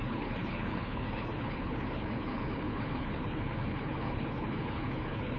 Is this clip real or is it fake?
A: fake